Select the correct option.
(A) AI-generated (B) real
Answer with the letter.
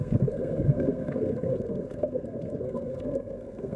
A